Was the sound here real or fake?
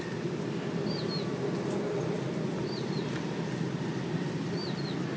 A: real